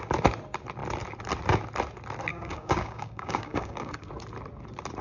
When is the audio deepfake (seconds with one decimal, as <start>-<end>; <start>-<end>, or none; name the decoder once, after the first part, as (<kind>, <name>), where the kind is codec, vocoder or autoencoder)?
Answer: 2.3-4.1 (codec, DAC)